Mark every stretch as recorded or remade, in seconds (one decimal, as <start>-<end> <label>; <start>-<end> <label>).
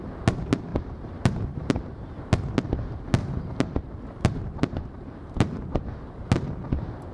0.0-0.7 recorded; 0.7-2.2 remade; 2.2-3.2 recorded; 3.2-6.3 remade; 6.3-7.1 recorded